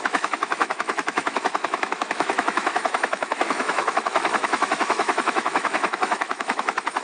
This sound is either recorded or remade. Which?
remade